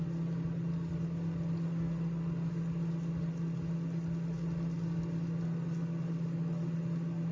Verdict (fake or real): real